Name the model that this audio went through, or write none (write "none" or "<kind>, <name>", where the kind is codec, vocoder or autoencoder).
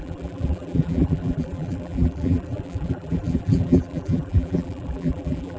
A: vocoder, BigVGAN v2